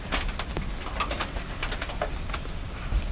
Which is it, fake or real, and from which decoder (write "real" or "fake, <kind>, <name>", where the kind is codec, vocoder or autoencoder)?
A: real